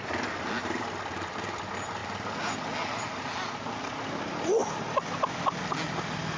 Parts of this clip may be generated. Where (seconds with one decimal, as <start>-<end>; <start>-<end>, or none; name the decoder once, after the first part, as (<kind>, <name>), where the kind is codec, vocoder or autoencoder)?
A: none